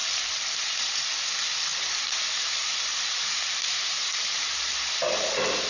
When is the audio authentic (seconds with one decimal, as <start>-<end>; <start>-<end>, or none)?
0.0-1.7; 5.0-5.7